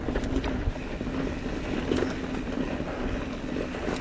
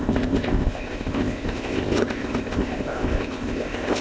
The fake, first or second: second